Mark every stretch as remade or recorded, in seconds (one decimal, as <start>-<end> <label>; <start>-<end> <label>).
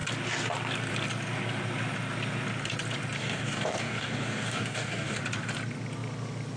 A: 0.0-3.2 recorded; 3.2-5.2 remade; 5.2-6.6 recorded